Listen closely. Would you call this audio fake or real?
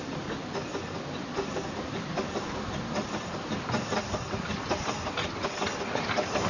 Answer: real